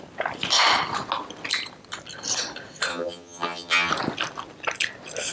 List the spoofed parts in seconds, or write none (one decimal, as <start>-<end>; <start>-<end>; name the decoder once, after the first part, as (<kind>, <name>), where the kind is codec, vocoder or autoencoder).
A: 2.9-3.9 (vocoder, HiFi-GAN)